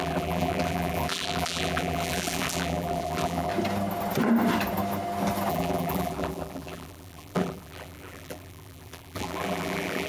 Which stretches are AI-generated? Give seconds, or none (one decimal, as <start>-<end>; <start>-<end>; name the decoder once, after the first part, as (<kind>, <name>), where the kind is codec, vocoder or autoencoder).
0.0-3.5 (vocoder, BigVGAN v2); 5.5-10.1